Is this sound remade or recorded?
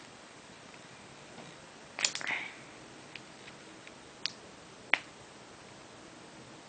recorded